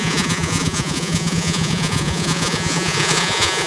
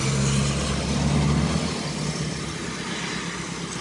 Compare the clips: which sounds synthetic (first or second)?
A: first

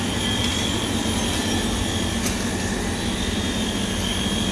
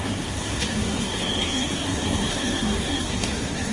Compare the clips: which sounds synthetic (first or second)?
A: second